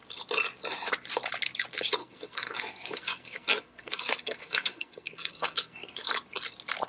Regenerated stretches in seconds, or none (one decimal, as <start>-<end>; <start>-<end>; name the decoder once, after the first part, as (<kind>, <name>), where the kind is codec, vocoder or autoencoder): 2.0-6.1 (codec, SNAC)